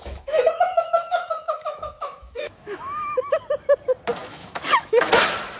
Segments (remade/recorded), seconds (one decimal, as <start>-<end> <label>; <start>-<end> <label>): 0.0-3.4 remade; 3.4-4.2 recorded; 4.2-5.1 remade; 5.1-5.6 recorded